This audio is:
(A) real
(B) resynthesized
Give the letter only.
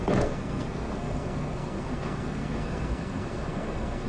B